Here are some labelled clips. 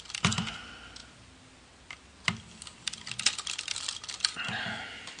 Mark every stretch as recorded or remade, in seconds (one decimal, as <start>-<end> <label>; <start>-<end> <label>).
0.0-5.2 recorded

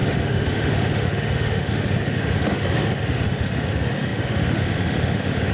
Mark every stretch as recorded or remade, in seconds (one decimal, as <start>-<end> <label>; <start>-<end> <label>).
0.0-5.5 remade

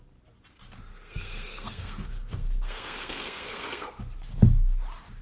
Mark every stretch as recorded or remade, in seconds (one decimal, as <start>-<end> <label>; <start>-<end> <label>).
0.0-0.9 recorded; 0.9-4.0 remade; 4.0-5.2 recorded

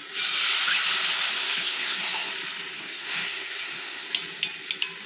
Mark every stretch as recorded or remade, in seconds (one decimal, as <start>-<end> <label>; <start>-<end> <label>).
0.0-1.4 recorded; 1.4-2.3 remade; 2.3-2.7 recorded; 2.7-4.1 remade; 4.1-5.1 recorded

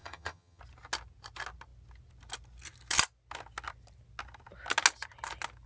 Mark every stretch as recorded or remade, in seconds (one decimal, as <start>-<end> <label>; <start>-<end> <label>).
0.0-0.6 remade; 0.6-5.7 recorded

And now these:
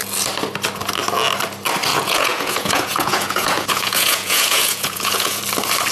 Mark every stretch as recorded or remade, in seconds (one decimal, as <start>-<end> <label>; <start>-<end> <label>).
0.0-1.9 recorded; 1.9-5.4 remade; 5.4-5.9 recorded